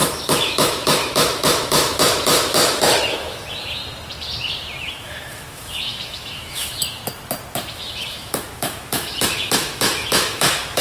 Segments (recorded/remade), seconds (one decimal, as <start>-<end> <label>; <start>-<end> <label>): 0.0-3.8 remade; 3.8-4.8 recorded; 4.8-7.0 remade; 7.0-7.7 recorded; 7.7-10.8 remade